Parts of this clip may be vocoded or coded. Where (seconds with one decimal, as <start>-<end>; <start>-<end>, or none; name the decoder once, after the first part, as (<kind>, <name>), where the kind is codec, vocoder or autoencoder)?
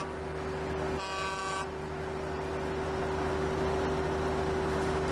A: none